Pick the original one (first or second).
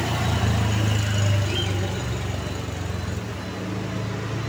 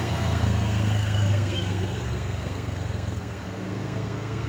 first